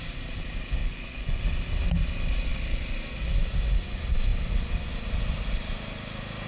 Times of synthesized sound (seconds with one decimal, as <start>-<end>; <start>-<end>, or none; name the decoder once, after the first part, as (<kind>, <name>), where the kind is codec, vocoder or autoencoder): 0.8-1.4 (vocoder, Vocos)